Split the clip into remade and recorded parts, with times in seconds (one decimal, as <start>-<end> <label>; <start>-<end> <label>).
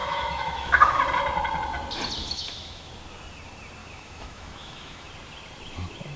0.0-1.0 remade; 1.0-2.2 recorded; 2.2-2.9 remade; 2.9-3.8 recorded; 3.8-5.1 remade; 5.1-6.2 recorded